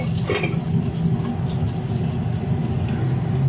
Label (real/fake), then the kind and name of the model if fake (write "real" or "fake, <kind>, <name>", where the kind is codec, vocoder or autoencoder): real